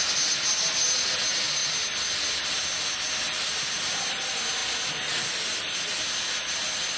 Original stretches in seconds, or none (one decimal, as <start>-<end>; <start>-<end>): 0.0-7.0